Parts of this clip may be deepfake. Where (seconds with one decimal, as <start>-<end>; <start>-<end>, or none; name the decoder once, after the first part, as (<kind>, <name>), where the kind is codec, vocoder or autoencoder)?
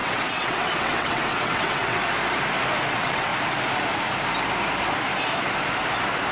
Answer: 0.0-2.0 (vocoder, WaveNeXt); 2.9-3.3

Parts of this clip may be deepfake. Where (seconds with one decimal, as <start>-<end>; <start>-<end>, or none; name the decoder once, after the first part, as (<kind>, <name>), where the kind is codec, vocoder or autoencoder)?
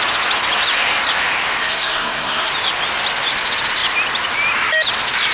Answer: 1.6-2.5 (codec, SNAC)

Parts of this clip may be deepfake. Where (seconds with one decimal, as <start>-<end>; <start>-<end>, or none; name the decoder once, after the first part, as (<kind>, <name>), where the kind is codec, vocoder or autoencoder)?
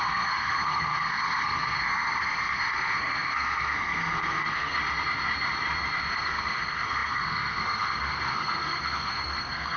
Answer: 0.0-4.8 (codec, SNAC); 6.1-9.8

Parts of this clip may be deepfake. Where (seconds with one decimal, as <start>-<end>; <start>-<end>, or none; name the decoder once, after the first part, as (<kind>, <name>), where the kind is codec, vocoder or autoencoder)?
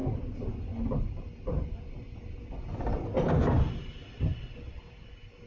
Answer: none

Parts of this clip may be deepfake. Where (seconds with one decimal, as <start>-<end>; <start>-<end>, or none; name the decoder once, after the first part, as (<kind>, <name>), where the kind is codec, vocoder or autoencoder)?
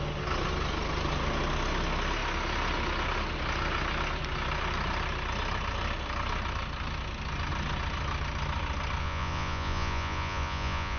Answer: 9.0-11.0 (vocoder, Vocos)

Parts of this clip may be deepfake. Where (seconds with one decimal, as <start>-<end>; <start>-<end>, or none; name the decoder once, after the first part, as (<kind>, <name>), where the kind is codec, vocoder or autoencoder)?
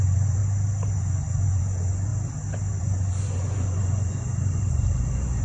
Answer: 0.0-0.4 (vocoder, Vocos); 0.9-2.1; 2.8-5.4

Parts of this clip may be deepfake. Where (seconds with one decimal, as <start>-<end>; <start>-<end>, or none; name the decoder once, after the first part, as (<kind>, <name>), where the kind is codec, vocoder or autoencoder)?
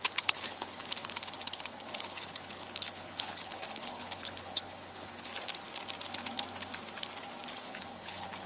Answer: 0.0-5.3 (codec, HILCodec); 7.5-8.5